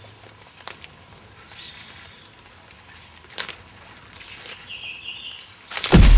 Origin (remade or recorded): recorded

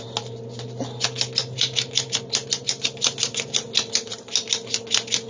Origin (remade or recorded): recorded